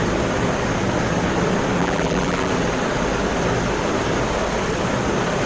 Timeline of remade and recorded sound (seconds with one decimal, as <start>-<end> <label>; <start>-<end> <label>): 0.0-1.8 recorded; 1.8-2.5 remade; 2.5-5.5 recorded